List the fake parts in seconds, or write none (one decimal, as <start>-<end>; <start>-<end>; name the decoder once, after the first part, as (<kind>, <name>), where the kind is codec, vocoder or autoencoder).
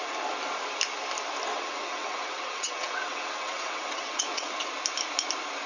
1.5-4.7 (vocoder, WaveNeXt)